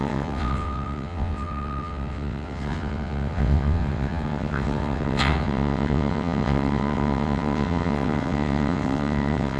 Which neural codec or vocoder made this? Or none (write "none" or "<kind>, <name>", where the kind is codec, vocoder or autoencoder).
vocoder, WaveNeXt